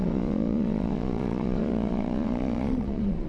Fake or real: fake